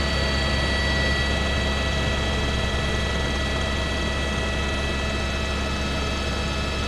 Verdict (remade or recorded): recorded